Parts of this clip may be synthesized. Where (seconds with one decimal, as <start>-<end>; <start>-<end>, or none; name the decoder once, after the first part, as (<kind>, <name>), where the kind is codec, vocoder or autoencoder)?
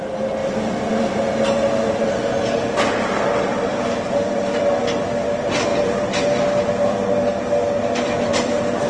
0.4-4.6 (vocoder, BigVGAN v2); 5.7-7.2